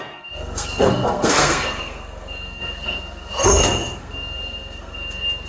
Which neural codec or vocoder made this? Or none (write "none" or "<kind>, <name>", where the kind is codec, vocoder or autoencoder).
codec, SNAC